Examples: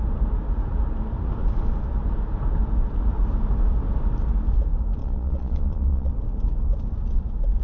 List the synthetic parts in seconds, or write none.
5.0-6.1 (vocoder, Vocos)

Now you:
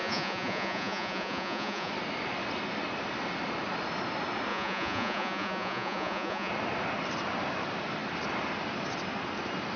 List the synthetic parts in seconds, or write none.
0.0-1.9 (vocoder, Vocos); 4.5-6.5

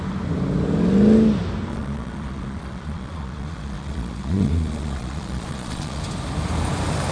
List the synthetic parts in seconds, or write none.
1.7-6.0 (vocoder, Vocos)

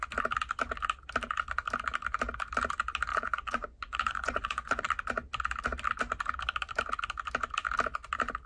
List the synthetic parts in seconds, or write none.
3.1-4.9 (vocoder, Vocos)

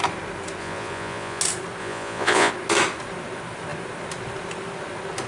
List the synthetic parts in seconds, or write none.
0.6-1.4 (vocoder, Vocos); 1.8-2.5